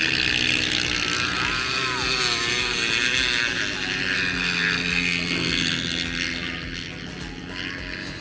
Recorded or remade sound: recorded